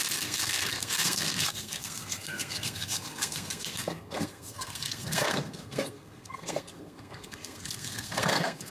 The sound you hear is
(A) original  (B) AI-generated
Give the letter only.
B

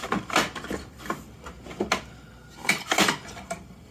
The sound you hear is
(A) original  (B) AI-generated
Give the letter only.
A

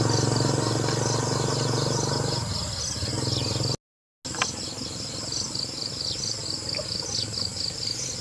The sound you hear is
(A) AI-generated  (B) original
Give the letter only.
B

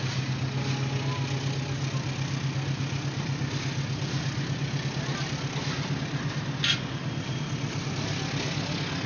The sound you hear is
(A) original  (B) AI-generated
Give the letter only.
A